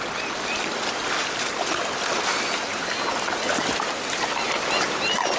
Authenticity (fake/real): real